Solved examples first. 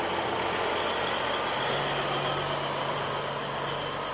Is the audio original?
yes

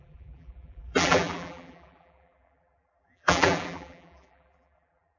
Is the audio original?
no